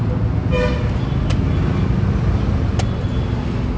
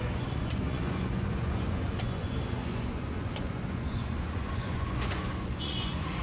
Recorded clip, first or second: first